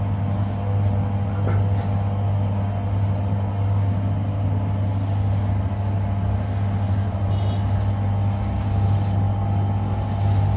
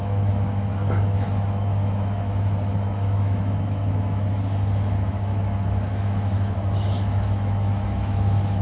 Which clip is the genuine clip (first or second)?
first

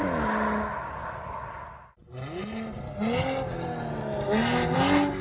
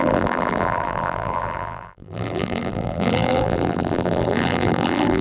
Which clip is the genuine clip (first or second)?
first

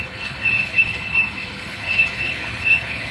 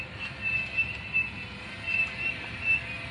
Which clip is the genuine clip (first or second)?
second